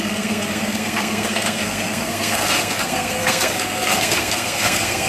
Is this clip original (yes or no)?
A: no